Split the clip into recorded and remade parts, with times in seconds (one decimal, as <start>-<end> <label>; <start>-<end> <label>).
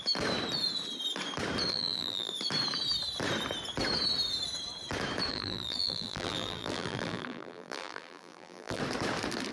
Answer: 0.0-1.7 recorded; 1.7-2.3 remade; 2.3-5.3 recorded; 5.3-8.8 remade; 8.8-9.5 recorded